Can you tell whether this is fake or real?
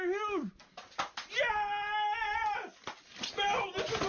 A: real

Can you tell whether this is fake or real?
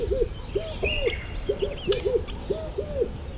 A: real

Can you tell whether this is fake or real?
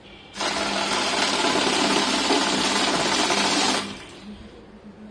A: real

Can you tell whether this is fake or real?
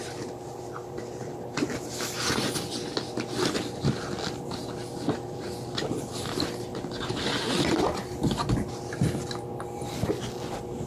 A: real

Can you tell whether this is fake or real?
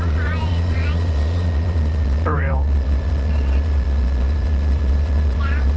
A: fake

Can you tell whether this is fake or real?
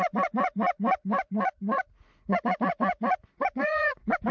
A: fake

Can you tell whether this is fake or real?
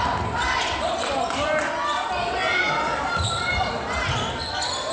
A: real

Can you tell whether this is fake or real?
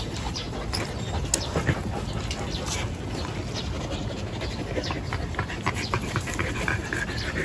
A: real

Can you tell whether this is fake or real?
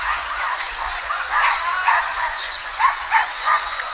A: fake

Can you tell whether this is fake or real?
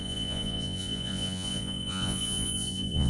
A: fake